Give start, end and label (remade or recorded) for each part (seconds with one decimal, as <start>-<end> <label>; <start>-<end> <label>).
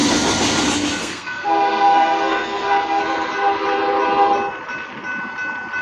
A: 0.0-1.0 recorded; 1.0-3.0 remade; 3.0-5.8 recorded